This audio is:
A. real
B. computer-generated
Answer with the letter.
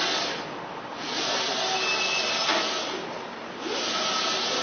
A